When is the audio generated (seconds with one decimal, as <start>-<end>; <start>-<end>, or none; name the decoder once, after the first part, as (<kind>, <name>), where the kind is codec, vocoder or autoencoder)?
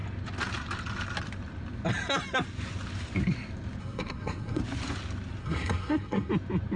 3.8-4.6 (codec, SNAC); 5.4-6.3